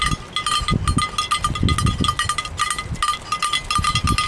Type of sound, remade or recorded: recorded